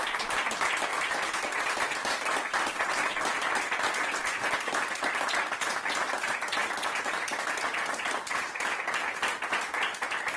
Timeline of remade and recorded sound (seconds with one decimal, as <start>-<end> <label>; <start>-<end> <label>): 0.0-0.9 recorded; 0.9-1.8 remade; 1.8-6.6 recorded; 6.6-9.2 remade; 9.2-10.4 recorded